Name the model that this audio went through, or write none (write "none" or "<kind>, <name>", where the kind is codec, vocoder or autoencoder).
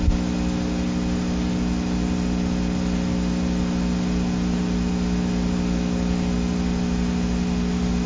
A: none